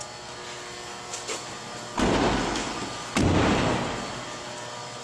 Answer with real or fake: real